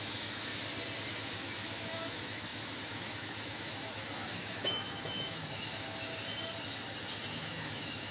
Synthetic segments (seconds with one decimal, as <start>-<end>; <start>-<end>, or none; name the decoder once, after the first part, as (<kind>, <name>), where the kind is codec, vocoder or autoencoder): 0.0-0.5 (autoencoder, DAC-VAE); 1.1-6.1; 7.3-8.1